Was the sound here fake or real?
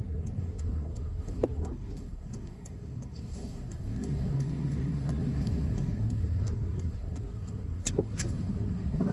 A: fake